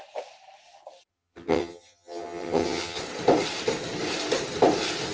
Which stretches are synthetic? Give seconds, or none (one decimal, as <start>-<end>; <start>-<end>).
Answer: 1.1-3.0